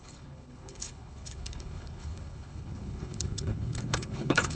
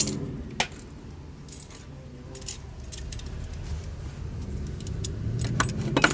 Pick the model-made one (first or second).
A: first